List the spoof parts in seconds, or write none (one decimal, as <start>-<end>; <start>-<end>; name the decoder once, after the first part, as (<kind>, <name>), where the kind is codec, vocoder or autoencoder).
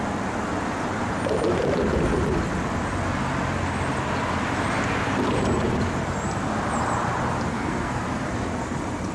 7.5-8.0 (codec, SNAC)